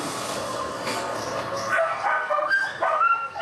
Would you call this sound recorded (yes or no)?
no